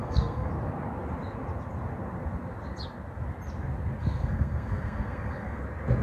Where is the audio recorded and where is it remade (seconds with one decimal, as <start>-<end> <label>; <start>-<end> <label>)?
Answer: 0.0-0.5 remade; 0.5-4.0 recorded; 4.0-5.6 remade; 5.6-6.0 recorded